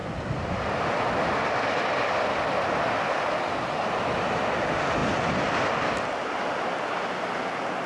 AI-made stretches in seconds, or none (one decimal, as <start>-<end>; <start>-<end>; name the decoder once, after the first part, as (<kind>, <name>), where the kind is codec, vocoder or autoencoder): none